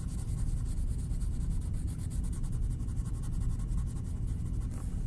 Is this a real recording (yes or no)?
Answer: yes